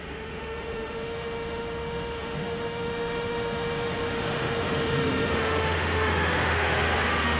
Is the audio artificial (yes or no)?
yes